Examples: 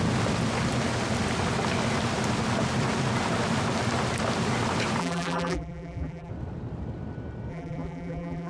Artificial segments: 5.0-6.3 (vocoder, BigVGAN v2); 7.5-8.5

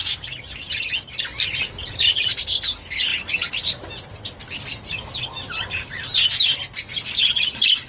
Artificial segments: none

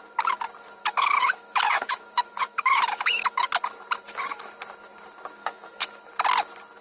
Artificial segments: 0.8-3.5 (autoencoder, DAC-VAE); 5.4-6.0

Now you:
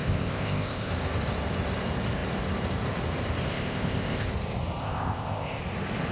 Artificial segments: 0.0-0.9 (codec, ZipCodec); 3.5-4.3; 4.8-5.6

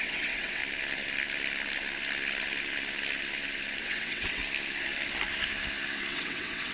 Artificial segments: 0.0-0.6 (vocoder, WaveNeXt); 3.8-4.4; 6.1-6.7

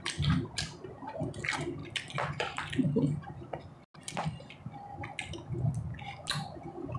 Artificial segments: none